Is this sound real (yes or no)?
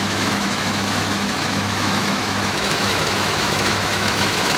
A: no